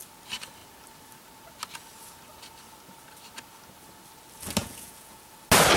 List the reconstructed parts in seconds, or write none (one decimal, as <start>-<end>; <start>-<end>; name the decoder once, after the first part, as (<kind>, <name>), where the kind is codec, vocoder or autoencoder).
4.6-5.3 (vocoder, Vocos)

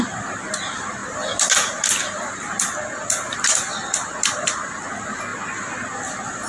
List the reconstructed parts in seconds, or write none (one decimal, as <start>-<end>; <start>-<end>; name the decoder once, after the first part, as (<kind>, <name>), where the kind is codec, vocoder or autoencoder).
none